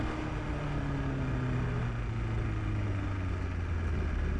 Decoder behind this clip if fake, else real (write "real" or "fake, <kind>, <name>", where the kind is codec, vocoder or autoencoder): real